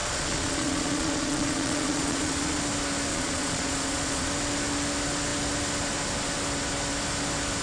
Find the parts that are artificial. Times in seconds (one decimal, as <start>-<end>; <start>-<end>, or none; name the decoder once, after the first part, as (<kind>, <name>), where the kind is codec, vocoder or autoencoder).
0.0-2.6 (vocoder, Vocos); 3.1-4.3